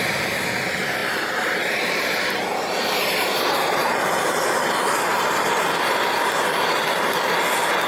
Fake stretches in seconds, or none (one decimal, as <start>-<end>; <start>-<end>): 1.0-4.4; 5.1-5.6